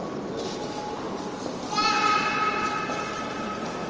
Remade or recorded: recorded